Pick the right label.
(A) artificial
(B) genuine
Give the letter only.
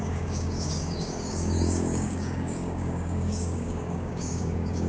A